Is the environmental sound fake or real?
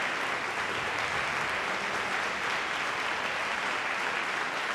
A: real